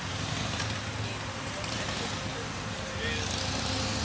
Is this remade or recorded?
recorded